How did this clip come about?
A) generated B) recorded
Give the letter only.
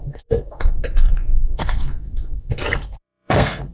A